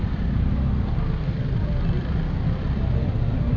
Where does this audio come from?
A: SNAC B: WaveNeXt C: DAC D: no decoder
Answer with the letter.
D